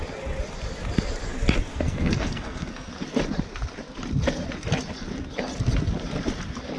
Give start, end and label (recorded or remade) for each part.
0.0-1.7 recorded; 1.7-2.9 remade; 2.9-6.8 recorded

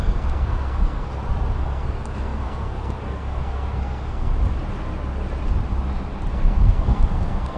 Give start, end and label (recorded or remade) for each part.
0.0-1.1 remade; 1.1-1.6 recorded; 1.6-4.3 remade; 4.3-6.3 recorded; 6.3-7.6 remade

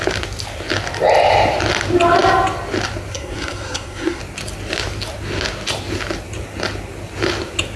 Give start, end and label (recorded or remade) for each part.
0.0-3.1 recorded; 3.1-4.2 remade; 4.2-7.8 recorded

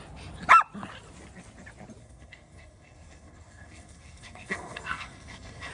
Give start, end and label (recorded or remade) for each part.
0.0-2.0 recorded; 2.0-5.7 remade